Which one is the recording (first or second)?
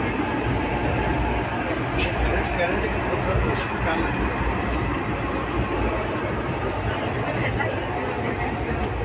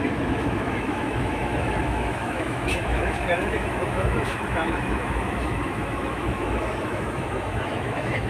first